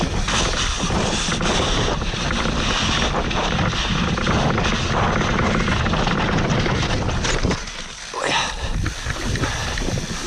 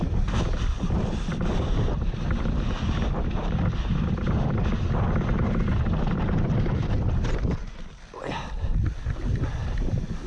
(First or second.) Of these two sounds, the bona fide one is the first